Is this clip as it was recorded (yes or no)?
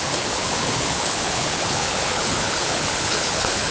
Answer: no